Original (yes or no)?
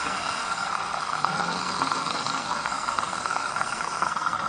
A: no